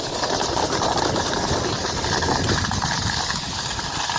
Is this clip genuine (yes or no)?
yes